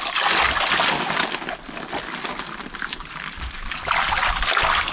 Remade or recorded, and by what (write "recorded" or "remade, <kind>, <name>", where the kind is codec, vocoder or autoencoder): recorded